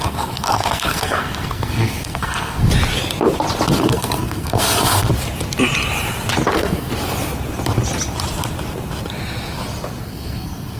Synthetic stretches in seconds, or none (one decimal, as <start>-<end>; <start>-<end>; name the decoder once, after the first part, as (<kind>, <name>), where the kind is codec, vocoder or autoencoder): 0.0-2.7 (codec, SNAC); 3.8-5.1; 6.5-6.9; 10.0-10.8